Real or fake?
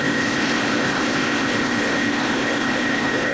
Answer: fake